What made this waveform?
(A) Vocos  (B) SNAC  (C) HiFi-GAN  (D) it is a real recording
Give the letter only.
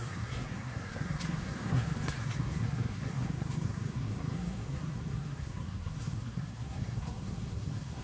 B